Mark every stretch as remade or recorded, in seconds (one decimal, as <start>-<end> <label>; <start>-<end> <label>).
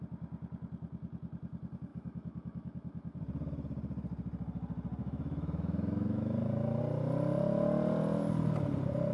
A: 0.0-1.9 recorded; 1.9-3.2 remade; 3.2-5.0 recorded; 5.0-6.8 remade; 6.8-9.1 recorded